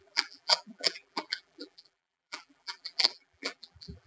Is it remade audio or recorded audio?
remade